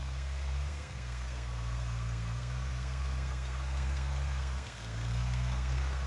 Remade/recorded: remade